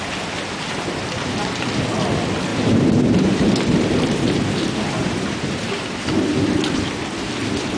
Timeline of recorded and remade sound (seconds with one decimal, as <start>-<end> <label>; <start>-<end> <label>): 0.0-2.5 recorded; 2.5-6.9 remade; 6.9-7.8 recorded